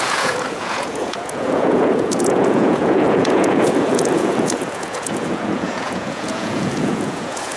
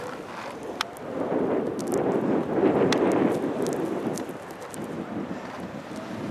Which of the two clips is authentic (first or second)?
second